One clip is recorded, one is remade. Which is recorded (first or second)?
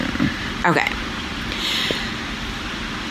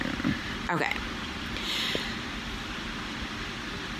first